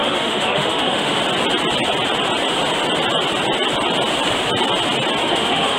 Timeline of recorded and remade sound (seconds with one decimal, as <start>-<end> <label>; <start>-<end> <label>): 0.0-1.2 remade; 1.2-5.2 recorded; 5.2-5.8 remade